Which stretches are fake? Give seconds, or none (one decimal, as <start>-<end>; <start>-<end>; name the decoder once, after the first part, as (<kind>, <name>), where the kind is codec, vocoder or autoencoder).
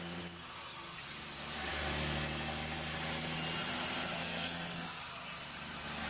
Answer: 4.2-5.0 (codec, SNAC)